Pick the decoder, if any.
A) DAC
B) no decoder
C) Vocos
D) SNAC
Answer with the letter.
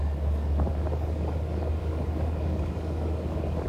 A